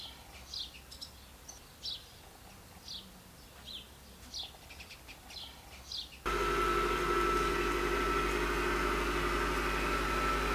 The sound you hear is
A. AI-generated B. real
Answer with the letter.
B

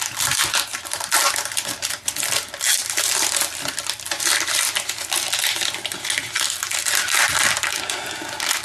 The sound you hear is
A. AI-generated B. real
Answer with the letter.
B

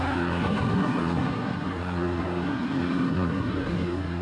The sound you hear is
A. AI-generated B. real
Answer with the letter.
A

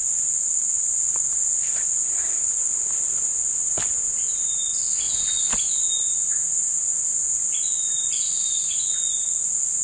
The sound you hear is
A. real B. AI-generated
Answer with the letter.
A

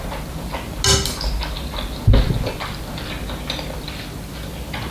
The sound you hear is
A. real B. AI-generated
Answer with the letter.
A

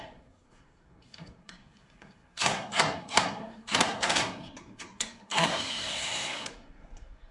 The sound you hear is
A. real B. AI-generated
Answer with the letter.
B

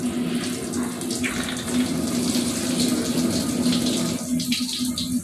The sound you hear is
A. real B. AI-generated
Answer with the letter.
A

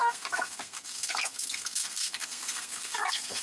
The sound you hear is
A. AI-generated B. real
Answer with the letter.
A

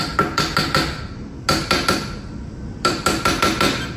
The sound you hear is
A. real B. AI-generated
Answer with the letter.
A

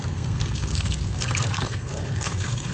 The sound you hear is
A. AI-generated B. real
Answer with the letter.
A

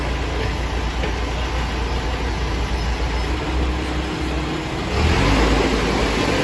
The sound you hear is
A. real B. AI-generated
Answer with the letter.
A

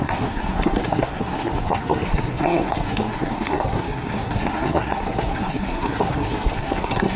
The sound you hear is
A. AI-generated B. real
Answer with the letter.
A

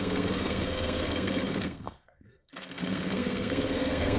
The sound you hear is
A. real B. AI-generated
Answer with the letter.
B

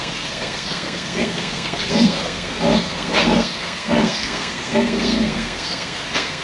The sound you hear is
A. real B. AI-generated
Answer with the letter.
B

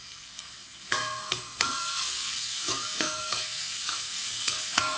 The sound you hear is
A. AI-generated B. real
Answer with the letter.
A